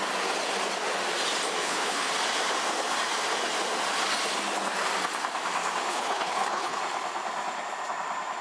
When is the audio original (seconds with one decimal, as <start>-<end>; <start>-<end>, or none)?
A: 0.0-1.6; 2.1-5.9; 6.8-8.4